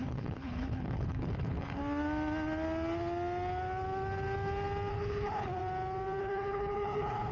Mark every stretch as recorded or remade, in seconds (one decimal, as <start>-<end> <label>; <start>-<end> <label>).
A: 0.0-1.8 remade; 1.8-4.9 recorded; 4.9-5.6 remade; 5.6-6.2 recorded; 6.2-7.3 remade